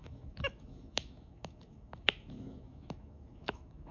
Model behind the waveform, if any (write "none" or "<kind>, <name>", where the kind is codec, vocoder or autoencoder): autoencoder, DAC-VAE